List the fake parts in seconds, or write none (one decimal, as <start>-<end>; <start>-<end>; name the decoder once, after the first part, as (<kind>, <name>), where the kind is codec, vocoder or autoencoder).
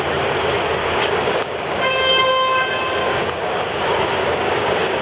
0.8-2.3 (codec, DAC); 3.0-5.0